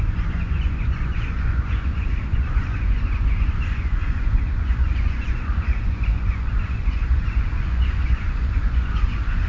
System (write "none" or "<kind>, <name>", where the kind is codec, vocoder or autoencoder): vocoder, Vocos